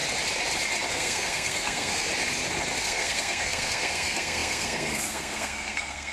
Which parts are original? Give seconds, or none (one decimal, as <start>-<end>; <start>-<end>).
0.0-0.9; 2.1-2.8